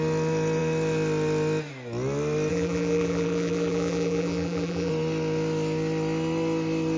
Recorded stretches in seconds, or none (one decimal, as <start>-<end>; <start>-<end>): 0.0-2.5; 4.9-7.0